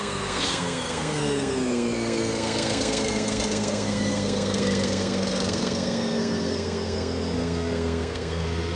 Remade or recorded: remade